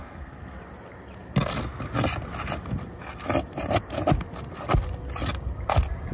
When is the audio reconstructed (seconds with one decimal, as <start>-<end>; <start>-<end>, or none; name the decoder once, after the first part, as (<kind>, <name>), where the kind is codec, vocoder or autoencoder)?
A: 0.0-0.6 (codec, SNAC)